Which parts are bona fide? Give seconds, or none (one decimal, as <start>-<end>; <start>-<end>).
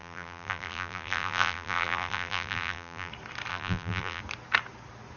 3.1-3.5; 4.2-5.2